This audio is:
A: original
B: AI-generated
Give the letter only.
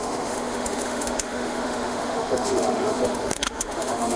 B